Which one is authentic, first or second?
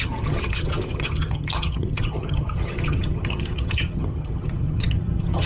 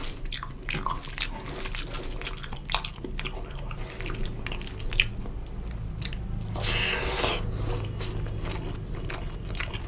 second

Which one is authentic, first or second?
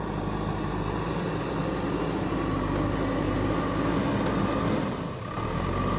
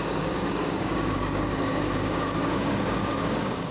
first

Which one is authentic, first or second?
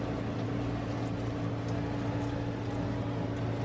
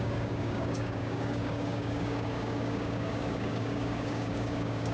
first